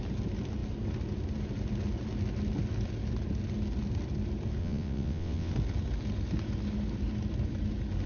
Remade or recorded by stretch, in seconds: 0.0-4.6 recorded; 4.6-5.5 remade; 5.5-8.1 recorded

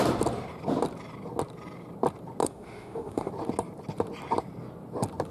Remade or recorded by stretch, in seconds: 0.0-2.4 recorded; 2.4-3.3 remade; 3.3-5.3 recorded